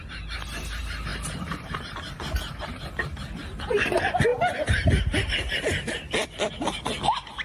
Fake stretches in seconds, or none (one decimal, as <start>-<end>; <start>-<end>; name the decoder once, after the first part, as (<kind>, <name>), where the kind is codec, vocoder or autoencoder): 1.1-1.8 (vocoder, BigVGAN v2); 4.3-6.5